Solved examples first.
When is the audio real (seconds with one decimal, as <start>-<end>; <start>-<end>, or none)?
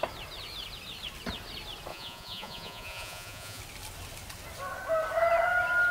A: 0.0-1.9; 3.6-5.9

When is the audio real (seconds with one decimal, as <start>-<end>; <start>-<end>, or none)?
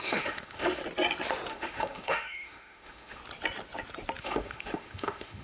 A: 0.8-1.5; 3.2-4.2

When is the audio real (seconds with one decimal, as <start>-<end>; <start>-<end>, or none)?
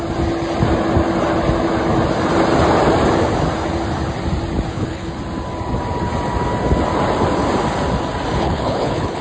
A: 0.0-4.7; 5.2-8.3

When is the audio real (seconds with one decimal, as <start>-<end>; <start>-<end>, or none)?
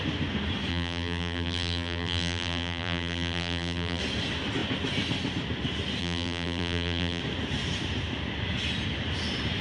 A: 0.0-0.7; 4.0-6.0; 7.2-9.6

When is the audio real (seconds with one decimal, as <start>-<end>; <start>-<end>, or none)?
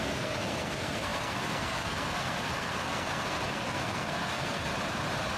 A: 4.7-5.4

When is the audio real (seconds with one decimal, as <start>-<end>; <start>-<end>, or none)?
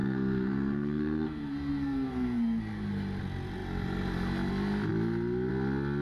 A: 2.6-6.0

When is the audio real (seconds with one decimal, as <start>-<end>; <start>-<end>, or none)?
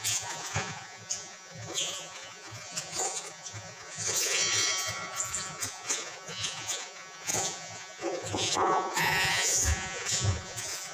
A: none